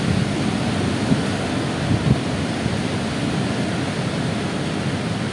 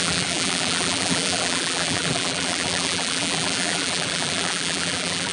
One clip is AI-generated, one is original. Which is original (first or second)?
first